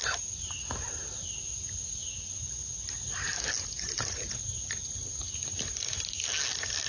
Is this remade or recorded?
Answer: recorded